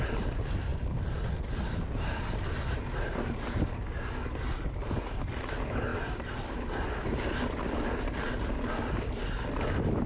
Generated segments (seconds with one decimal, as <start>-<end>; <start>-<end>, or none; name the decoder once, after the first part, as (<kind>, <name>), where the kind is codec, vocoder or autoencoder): none